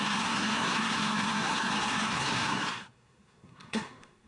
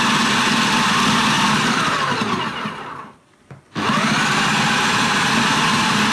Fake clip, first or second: first